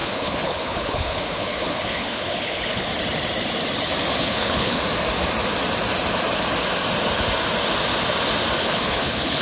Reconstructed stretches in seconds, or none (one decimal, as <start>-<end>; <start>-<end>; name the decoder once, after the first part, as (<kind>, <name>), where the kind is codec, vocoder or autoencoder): 0.0-2.9 (codec, HILCodec); 4.2-4.8; 8.6-9.4